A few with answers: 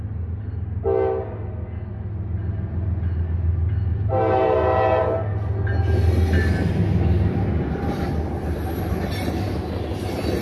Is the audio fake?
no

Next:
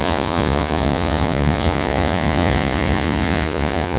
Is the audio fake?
yes